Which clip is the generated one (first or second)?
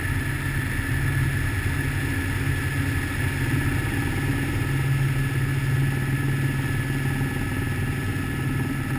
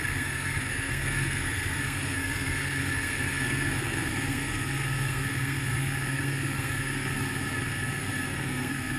second